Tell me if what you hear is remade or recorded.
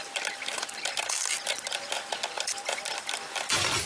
recorded